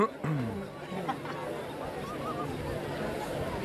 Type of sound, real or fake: real